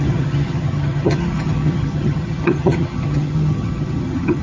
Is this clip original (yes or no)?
no